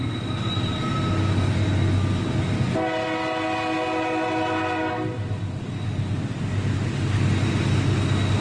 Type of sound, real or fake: real